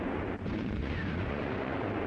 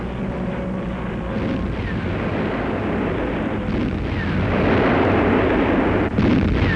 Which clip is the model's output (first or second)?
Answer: first